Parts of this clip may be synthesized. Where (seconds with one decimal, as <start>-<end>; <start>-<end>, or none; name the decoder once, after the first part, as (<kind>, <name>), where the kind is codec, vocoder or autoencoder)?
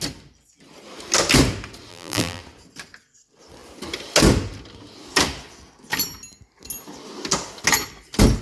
1.9-2.4 (vocoder, BigVGAN v2)